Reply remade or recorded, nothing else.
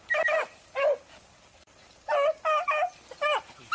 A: recorded